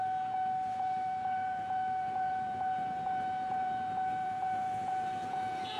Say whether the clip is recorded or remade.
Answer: remade